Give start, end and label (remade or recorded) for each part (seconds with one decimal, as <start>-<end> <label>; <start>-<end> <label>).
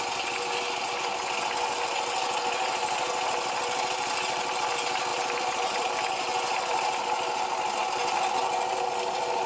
0.0-5.1 recorded; 5.1-6.1 remade; 6.1-9.5 recorded